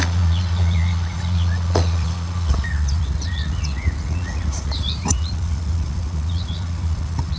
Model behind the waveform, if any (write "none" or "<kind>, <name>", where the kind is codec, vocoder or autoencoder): vocoder, Vocos